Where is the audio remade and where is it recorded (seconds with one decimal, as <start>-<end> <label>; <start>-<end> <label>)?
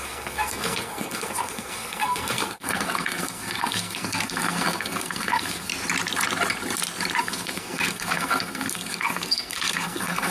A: 0.0-5.7 remade; 5.7-7.2 recorded; 7.2-10.3 remade